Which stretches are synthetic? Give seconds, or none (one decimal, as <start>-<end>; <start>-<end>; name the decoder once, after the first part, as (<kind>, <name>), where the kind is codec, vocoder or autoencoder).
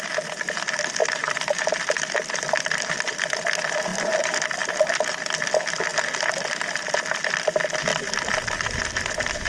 1.0-3.2 (vocoder, BigVGAN v2); 3.9-4.7